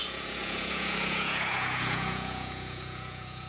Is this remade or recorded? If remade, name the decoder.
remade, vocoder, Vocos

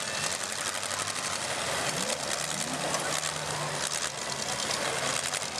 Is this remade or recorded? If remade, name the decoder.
recorded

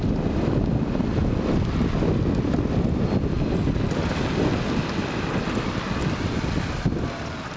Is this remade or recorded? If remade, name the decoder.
recorded